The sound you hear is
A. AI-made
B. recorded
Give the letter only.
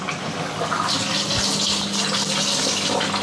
B